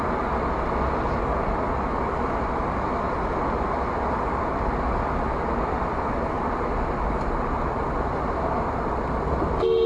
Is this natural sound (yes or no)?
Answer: yes